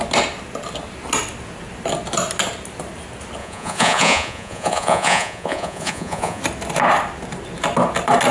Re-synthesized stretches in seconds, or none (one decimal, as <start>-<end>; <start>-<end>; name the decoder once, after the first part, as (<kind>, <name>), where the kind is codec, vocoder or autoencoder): 3.4-6.4 (vocoder, Vocos)